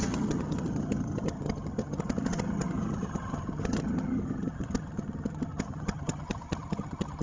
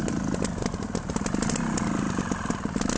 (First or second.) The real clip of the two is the second